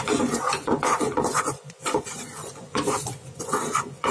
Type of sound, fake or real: fake